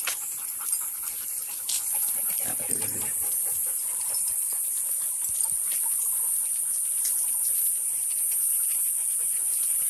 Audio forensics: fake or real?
fake